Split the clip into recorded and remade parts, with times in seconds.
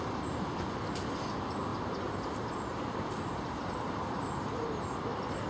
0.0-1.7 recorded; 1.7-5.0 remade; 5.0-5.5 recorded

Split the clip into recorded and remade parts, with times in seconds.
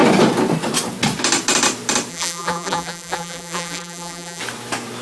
0.0-2.1 recorded; 2.1-4.4 remade; 4.4-5.0 recorded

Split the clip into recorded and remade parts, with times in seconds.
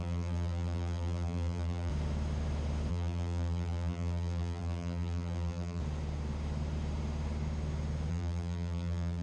0.0-1.9 remade; 1.9-2.9 recorded; 2.9-5.8 remade; 5.8-8.1 recorded; 8.1-9.2 remade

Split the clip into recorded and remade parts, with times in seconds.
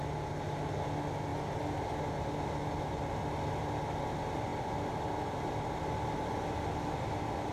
0.0-7.5 recorded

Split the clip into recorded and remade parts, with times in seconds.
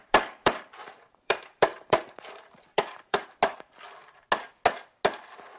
0.0-3.4 remade; 3.4-5.6 recorded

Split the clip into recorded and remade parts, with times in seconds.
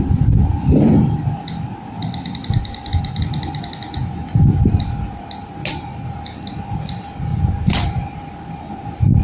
0.0-0.5 recorded; 0.5-1.3 remade; 1.3-2.0 recorded; 2.0-3.2 remade; 3.2-7.3 recorded; 7.3-9.2 remade